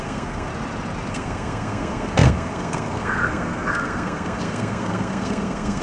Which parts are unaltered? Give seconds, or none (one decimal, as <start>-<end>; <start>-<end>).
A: 0.5-1.1